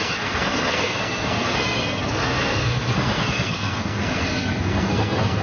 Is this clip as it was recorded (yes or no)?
no